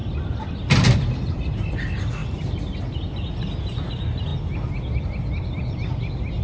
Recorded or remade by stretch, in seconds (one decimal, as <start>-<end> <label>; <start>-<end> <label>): 0.0-6.4 recorded